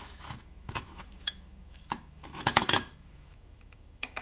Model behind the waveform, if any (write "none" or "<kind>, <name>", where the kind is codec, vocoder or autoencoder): autoencoder, DAC-VAE